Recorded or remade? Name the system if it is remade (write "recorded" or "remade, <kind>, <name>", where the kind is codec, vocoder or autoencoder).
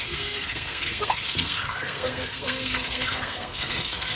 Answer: remade, codec, SNAC